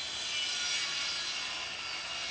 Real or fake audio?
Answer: real